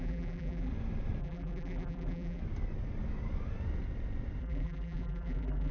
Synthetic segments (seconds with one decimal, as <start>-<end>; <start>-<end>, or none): 0.0-0.7; 1.2-2.4; 4.4-5.7